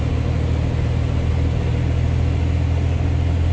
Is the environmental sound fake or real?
real